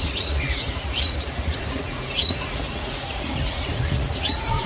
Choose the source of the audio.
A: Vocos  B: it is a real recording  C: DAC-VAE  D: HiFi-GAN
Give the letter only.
A